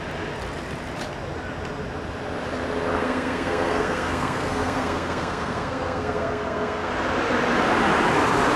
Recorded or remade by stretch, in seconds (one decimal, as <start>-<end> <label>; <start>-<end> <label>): 0.0-3.0 recorded; 3.0-6.9 remade; 6.9-8.6 recorded